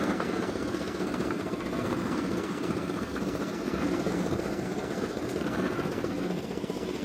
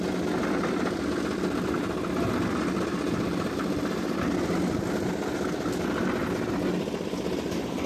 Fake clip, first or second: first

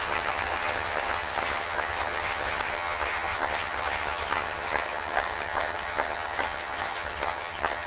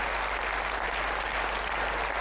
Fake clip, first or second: first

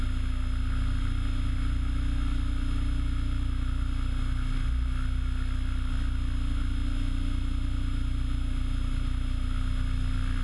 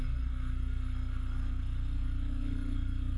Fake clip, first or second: second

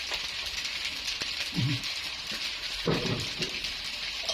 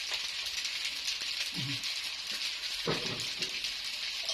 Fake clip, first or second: first